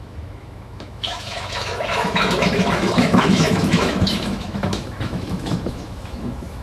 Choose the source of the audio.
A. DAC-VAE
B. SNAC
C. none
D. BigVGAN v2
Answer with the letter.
A